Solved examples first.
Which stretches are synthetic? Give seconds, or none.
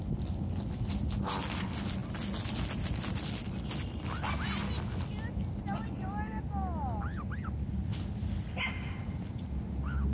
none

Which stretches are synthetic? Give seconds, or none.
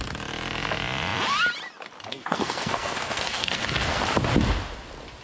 2.1-4.0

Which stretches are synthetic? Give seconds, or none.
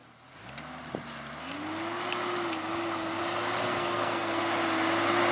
3.7-4.4